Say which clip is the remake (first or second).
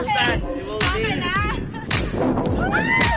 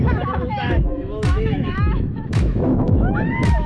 second